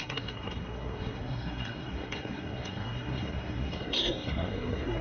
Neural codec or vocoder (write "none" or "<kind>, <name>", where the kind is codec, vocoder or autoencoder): codec, SNAC